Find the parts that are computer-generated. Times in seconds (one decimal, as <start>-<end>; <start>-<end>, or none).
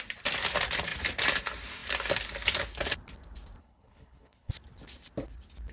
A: 3.6-4.5